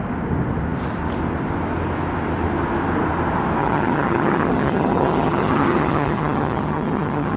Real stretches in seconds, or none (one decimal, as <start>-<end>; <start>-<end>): 0.0-3.6